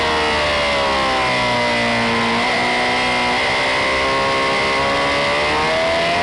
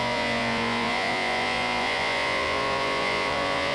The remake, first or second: second